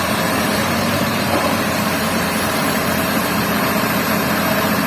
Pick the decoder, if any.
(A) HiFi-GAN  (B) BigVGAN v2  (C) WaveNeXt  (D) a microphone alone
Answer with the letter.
B